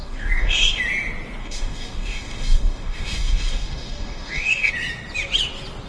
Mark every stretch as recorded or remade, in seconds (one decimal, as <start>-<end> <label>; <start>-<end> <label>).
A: 0.0-0.8 remade; 0.8-1.4 recorded; 1.4-4.7 remade; 4.7-5.9 recorded